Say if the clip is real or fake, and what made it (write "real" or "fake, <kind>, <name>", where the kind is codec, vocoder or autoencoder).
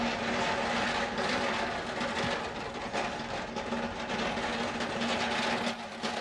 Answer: real